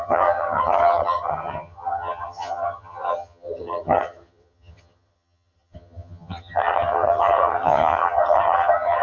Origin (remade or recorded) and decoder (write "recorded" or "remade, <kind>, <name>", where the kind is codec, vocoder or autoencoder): remade, vocoder, HiFi-GAN